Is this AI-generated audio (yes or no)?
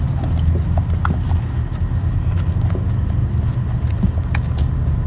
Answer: no